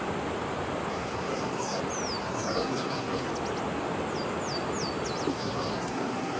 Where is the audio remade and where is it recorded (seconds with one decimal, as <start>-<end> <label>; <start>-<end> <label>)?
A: 0.0-0.9 recorded; 0.9-1.8 remade; 1.8-2.2 recorded; 2.2-3.3 remade; 3.3-5.3 recorded; 5.3-6.4 remade